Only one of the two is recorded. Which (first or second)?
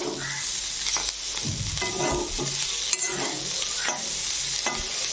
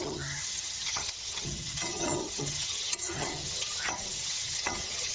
first